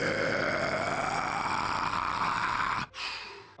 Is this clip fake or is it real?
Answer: real